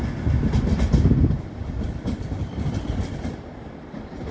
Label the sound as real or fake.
real